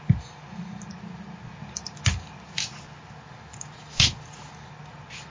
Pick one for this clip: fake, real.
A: real